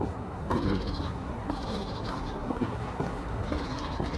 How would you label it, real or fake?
fake